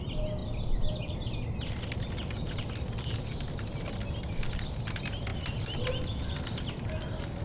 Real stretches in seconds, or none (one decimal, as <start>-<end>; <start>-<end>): 0.0-7.4